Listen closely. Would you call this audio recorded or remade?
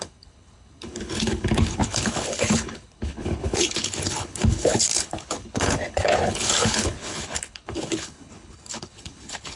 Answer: remade